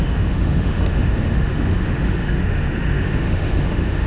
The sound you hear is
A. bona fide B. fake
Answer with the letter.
B